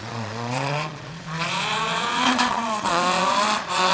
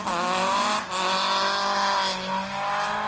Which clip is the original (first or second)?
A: second